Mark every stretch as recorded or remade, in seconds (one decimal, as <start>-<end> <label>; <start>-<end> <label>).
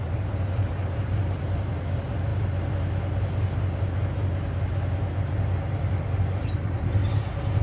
0.0-2.3 remade; 2.3-5.2 recorded; 5.2-7.0 remade; 7.0-7.6 recorded